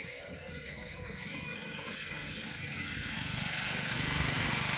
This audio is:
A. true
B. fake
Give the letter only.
B